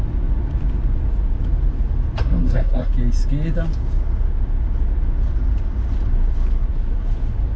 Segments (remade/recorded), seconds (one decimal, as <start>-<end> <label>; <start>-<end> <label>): 0.0-2.2 recorded; 2.2-2.9 remade; 2.9-7.6 recorded